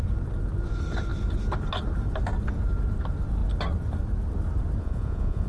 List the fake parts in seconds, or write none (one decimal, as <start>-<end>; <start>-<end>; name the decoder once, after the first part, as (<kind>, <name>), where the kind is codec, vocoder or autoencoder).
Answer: 4.8-5.5 (vocoder, Vocos)